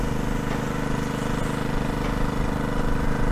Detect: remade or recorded recorded